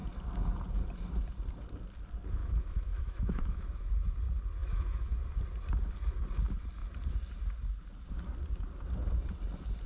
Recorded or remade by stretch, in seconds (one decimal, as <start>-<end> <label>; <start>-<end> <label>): 0.0-2.4 recorded; 2.4-3.9 remade; 3.9-4.6 recorded; 4.6-5.1 remade; 5.1-9.9 recorded